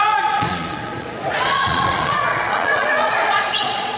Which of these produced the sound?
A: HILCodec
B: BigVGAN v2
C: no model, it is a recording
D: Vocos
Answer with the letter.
D